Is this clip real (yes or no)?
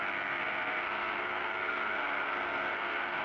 no